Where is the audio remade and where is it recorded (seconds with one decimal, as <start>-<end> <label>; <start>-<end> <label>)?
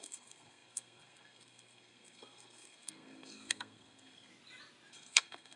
0.0-4.3 remade; 4.3-4.9 recorded; 4.9-5.6 remade